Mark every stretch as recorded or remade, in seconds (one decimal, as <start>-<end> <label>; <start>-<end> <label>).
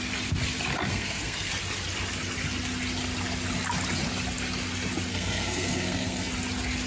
0.0-0.9 recorded; 0.9-1.5 remade; 1.5-5.1 recorded; 5.1-6.3 remade; 6.3-6.9 recorded